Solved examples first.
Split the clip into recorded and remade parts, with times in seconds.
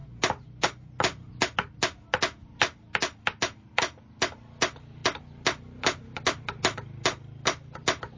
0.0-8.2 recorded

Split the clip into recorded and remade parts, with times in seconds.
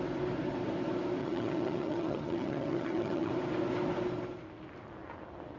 0.0-1.2 recorded; 1.2-3.3 remade; 3.3-5.6 recorded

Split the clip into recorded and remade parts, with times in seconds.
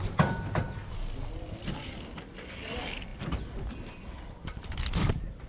0.0-5.5 recorded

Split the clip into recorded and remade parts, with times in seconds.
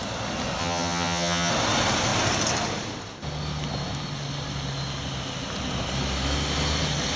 0.0-0.6 recorded; 0.6-1.5 remade; 1.5-7.2 recorded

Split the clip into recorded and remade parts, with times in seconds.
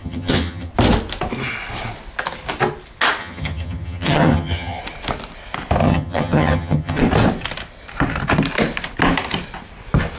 0.0-0.7 remade; 0.7-3.2 recorded; 3.2-4.8 remade; 4.8-5.8 recorded; 5.8-7.0 remade; 7.0-10.2 recorded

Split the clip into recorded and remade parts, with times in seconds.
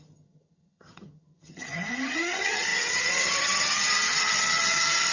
0.0-5.1 remade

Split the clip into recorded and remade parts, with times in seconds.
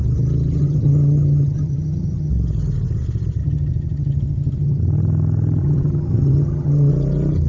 0.0-0.6 recorded; 0.6-2.3 remade; 2.3-3.4 recorded; 3.4-4.8 remade; 4.8-5.6 recorded; 5.6-6.9 remade; 6.9-7.5 recorded